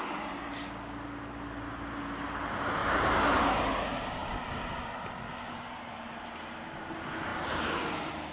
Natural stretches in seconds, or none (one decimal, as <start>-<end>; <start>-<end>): 0.0-8.3